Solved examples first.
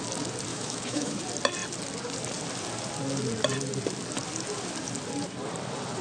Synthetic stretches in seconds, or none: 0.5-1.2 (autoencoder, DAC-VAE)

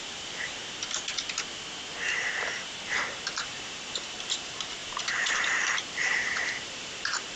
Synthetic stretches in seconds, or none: 0.0-0.6 (vocoder, BigVGAN v2); 3.4-7.4

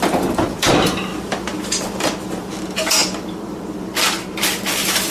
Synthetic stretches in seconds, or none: 0.0-5.1 (vocoder, BigVGAN v2)

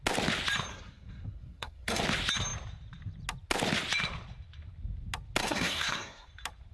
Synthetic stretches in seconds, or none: 0.7-2.0 (codec, SNAC); 5.4-6.3

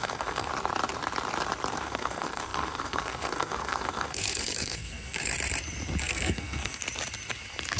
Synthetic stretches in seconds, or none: 0.0-0.5 (codec, SNAC); 1.7-5.3; 6.0-6.8

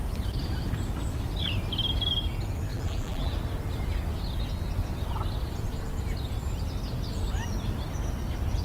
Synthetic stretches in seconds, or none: 2.7-3.3 (vocoder, BigVGAN v2)

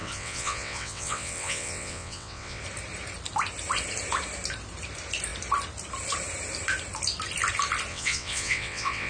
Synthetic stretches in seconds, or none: 0.0-2.6 (vocoder, WaveNeXt); 7.9-9.1